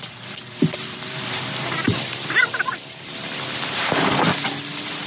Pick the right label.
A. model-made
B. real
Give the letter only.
A